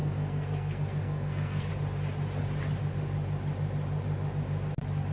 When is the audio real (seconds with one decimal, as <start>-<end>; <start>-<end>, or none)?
1.7-5.1